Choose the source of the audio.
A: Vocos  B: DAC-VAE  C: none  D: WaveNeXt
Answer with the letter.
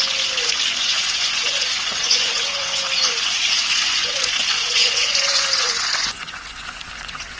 A